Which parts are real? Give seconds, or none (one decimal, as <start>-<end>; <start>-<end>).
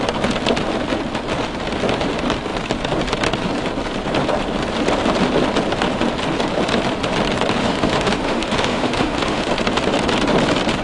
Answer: 0.0-7.6; 9.5-10.8